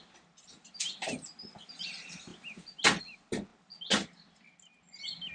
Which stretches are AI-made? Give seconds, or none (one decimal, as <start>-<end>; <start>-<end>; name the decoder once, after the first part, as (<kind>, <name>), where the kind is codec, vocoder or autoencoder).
none